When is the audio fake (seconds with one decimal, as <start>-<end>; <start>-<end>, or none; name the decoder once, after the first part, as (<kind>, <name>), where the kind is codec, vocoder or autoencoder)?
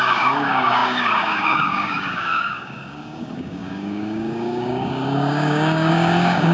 0.0-6.5 (codec, DAC)